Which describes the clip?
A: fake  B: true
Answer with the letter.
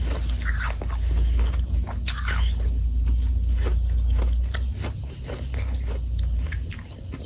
B